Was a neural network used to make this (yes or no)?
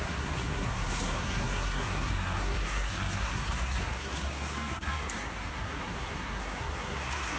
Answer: yes